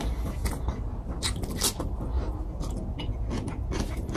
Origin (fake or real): real